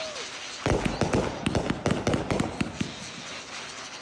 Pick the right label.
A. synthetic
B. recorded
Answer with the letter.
B